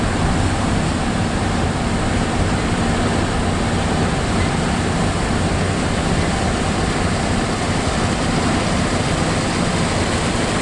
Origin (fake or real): real